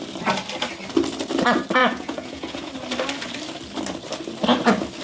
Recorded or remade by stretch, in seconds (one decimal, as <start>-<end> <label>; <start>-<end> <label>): 0.0-1.8 recorded; 1.8-2.7 remade; 2.7-5.0 recorded